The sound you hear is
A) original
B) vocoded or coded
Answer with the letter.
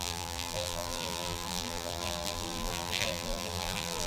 B